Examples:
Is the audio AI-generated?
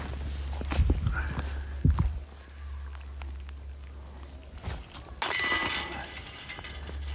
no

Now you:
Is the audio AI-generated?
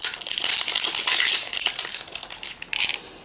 no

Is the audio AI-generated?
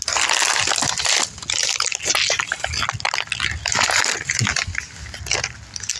no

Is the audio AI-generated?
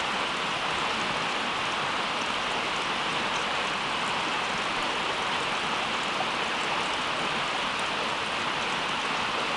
no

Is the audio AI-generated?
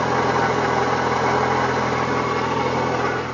no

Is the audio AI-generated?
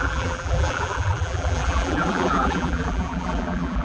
yes